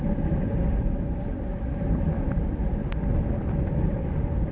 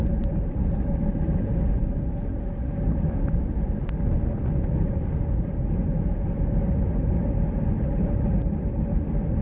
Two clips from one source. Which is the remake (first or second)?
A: first